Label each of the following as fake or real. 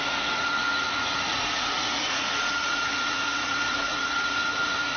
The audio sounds fake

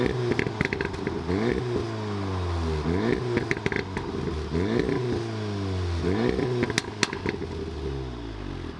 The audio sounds real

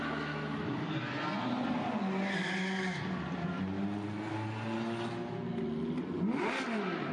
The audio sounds real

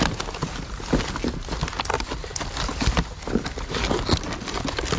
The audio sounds real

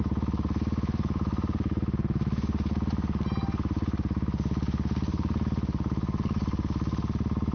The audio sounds real